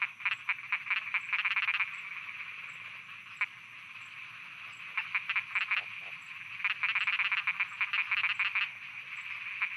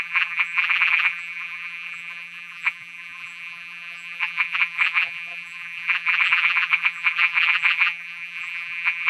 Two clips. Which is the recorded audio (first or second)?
first